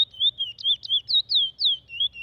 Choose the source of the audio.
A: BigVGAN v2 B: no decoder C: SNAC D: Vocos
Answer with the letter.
B